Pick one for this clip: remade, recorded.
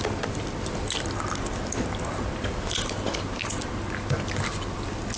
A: recorded